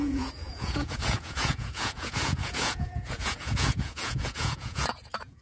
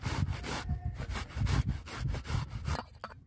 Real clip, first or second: second